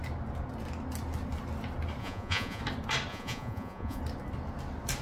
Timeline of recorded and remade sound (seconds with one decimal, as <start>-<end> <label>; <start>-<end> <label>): 0.0-2.0 recorded; 2.0-2.6 remade; 2.6-3.1 recorded; 3.1-4.0 remade; 4.0-5.0 recorded

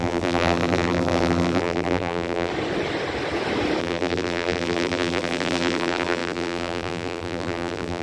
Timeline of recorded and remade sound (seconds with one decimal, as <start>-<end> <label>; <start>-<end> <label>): 0.0-2.5 remade; 2.5-3.8 recorded; 3.8-8.0 remade

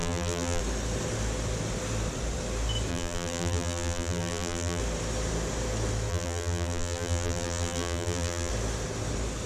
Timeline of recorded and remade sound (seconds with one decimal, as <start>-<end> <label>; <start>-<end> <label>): 0.0-0.6 remade; 0.6-2.9 recorded; 2.9-4.8 remade; 4.8-6.1 recorded; 6.1-8.5 remade; 8.5-9.5 recorded

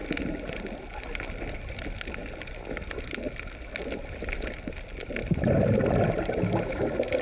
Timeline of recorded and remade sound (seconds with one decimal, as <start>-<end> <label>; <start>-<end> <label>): 0.0-7.2 recorded

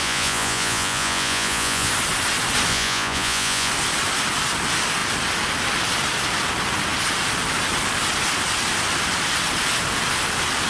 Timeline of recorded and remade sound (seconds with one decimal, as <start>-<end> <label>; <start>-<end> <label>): 0.0-1.9 remade; 1.9-2.7 recorded; 2.7-3.7 remade; 3.7-10.7 recorded